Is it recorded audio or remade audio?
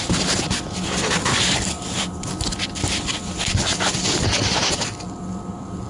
recorded